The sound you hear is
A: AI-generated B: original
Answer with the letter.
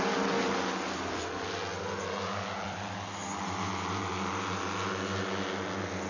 B